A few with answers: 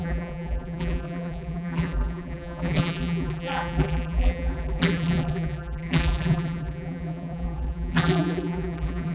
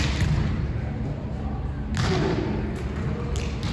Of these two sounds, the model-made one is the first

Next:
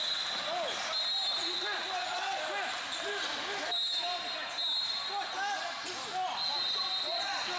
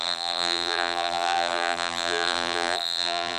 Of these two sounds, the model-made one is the second